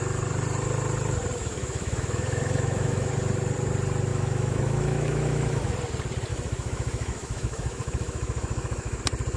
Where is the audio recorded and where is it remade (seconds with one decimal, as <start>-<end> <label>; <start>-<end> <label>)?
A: 0.0-1.4 recorded; 1.4-3.1 remade; 3.1-4.1 recorded; 4.1-5.7 remade; 5.7-6.3 recorded; 6.3-9.0 remade; 9.0-9.4 recorded